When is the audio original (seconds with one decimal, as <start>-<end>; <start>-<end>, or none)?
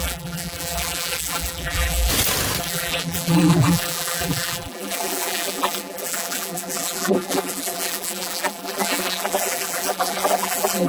2.1-2.6